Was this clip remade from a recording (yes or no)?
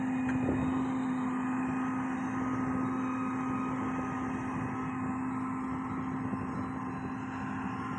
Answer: no